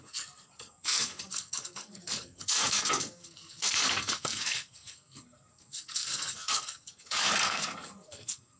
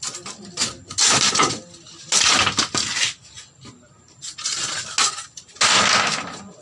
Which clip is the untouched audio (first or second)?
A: second